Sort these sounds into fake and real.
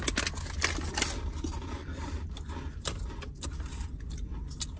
real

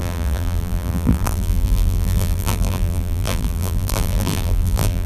fake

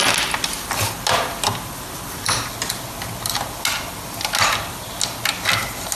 real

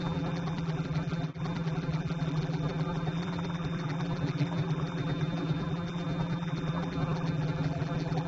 fake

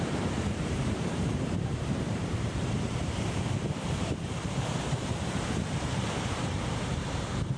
fake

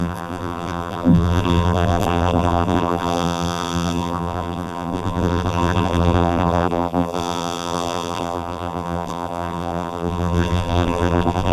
fake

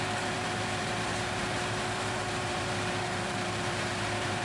fake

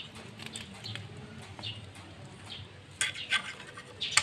real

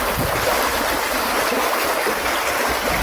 real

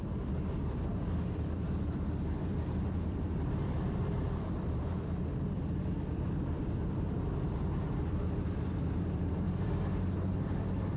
fake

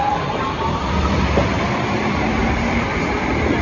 fake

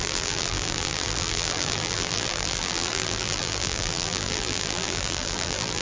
fake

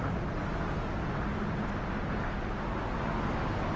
real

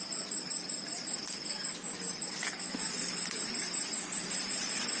fake